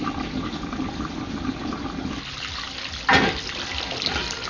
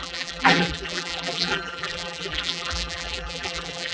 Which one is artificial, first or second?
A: second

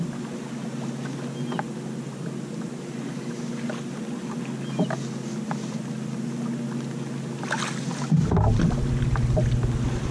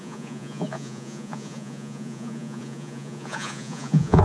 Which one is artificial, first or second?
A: second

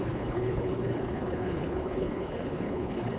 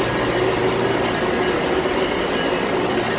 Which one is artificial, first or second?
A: first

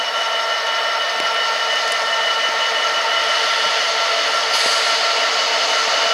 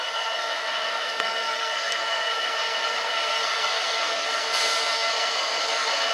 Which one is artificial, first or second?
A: second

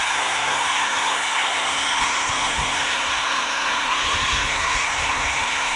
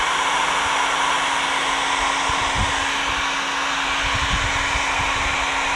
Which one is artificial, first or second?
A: first